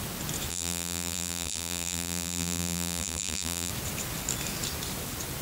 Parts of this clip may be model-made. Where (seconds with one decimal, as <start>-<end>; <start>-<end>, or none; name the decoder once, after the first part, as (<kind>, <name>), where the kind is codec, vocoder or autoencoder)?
0.5-3.7 (vocoder, BigVGAN v2)